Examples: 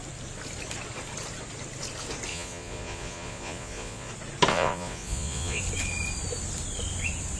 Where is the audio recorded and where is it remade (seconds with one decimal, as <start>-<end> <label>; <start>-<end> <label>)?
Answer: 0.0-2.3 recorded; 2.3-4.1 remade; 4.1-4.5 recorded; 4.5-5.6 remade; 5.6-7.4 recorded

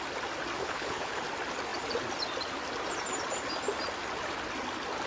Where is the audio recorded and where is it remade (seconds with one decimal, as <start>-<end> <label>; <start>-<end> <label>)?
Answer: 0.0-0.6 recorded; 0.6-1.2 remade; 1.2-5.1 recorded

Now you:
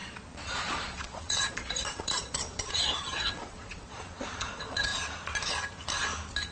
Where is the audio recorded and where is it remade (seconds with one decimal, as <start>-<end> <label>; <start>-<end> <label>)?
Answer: 0.0-4.9 remade; 4.9-6.5 recorded